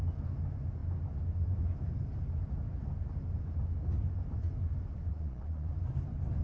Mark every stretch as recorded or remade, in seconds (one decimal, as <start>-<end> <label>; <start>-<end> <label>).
0.0-5.1 recorded; 5.1-5.7 remade; 5.7-6.4 recorded